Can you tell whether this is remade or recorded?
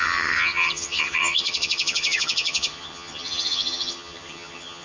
remade